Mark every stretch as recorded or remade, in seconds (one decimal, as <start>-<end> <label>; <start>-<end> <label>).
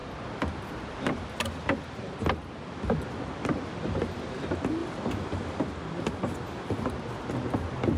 0.0-0.7 remade; 0.7-4.8 recorded; 4.8-5.6 remade; 5.6-8.0 recorded